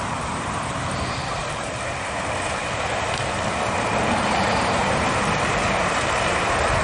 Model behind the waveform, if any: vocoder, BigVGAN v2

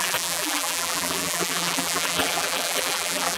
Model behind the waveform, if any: vocoder, BigVGAN v2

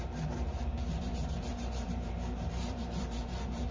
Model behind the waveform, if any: vocoder, BigVGAN v2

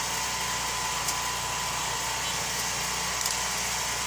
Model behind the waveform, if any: none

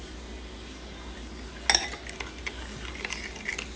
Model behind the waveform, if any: none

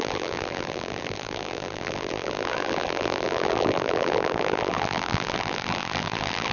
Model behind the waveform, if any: vocoder, BigVGAN v2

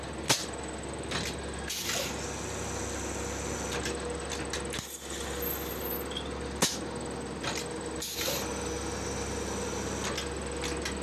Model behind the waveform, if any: none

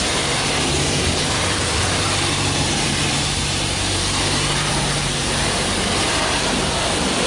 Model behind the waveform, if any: vocoder, BigVGAN v2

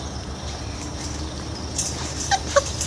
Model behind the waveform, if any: vocoder, BigVGAN v2